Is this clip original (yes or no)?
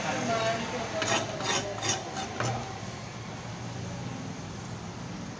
yes